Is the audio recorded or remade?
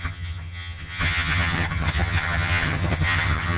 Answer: remade